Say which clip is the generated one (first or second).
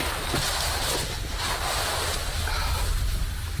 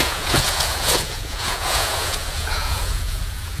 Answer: second